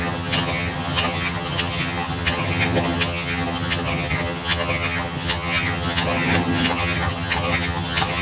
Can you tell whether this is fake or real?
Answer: fake